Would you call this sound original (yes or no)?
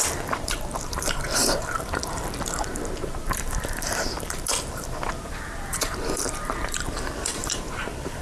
no